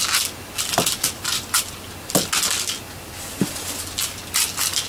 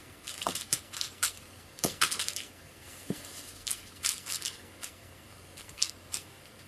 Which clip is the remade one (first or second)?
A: second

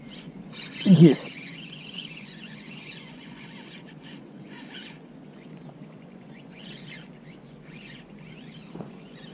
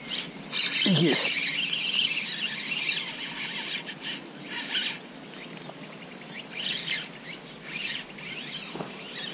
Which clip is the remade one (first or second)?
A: first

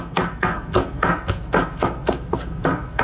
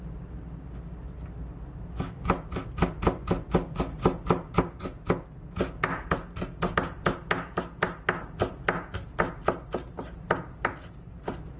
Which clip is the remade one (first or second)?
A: first